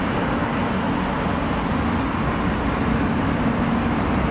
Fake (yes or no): no